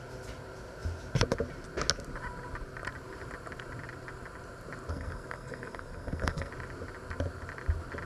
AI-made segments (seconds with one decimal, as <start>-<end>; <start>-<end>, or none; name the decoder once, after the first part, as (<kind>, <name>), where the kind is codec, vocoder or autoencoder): 4.9-6.5 (codec, SNAC)